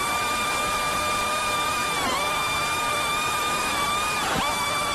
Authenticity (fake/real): real